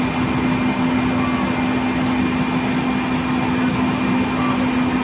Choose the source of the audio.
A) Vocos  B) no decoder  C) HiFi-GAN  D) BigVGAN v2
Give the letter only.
B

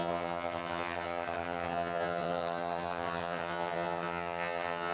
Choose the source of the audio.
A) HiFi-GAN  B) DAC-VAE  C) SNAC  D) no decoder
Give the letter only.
A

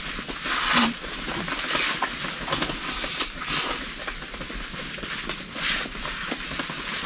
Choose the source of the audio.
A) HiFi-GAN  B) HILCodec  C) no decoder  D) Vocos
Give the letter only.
C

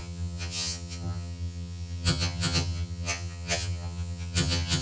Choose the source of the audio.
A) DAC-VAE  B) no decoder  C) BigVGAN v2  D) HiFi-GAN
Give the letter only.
D